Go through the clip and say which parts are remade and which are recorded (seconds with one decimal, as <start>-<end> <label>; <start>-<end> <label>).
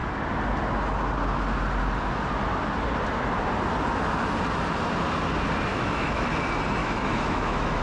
0.0-5.7 recorded; 5.7-6.3 remade; 6.3-6.8 recorded; 6.8-7.8 remade